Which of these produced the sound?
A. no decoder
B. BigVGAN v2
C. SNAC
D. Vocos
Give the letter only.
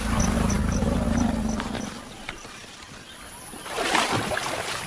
B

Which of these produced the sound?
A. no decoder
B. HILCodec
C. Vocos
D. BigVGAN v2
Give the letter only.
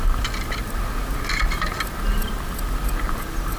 A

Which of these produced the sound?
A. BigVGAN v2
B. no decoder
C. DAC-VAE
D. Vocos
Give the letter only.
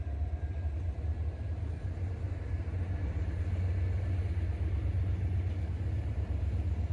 B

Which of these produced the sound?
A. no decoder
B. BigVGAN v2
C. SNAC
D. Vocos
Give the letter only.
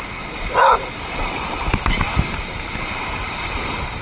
B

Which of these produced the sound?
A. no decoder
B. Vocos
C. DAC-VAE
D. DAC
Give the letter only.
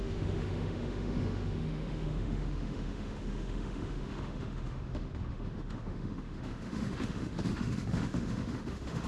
C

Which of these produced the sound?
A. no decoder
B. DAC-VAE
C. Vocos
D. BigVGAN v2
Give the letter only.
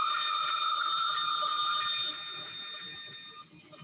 A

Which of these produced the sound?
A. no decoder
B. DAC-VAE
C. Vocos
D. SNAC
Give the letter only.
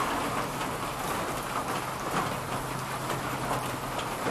A